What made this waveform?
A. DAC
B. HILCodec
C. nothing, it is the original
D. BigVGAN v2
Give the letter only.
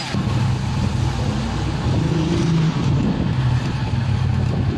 C